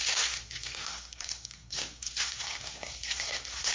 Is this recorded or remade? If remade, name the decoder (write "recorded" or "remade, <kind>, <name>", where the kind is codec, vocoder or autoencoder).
remade, codec, SNAC